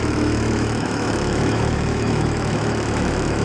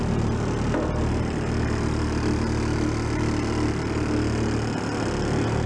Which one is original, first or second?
second